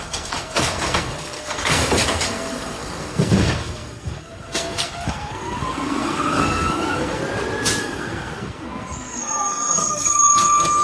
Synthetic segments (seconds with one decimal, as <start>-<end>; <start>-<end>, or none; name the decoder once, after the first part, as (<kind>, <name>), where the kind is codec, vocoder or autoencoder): 0.0-7.2 (codec, SNAC); 7.8-10.8